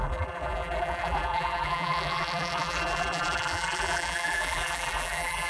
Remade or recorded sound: remade